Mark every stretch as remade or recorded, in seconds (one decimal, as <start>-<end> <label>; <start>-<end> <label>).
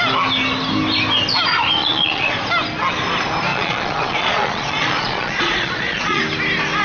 0.0-1.8 recorded; 1.8-2.3 remade; 2.3-3.5 recorded; 3.5-6.2 remade; 6.2-6.8 recorded